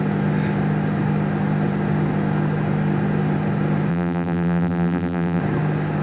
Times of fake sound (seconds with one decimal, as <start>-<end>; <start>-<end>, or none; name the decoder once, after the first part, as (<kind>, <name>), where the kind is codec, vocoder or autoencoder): 3.9-5.4 (vocoder, BigVGAN v2)